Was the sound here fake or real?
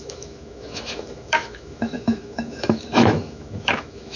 fake